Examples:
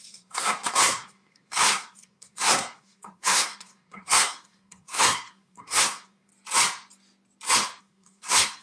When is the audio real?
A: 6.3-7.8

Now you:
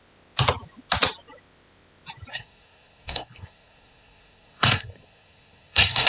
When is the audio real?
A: 0.0-2.3

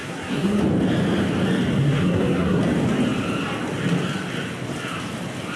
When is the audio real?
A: 0.6-1.8; 2.6-5.6

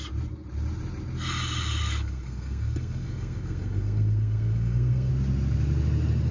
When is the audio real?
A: 0.0-1.8; 5.1-6.3

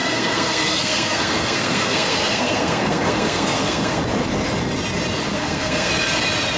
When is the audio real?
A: 4.0-5.3; 5.9-6.6

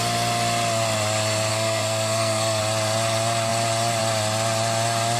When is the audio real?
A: 0.0-1.5; 2.6-5.2